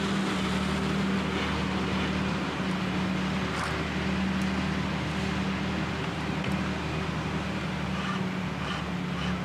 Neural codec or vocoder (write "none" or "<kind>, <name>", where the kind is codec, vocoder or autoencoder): none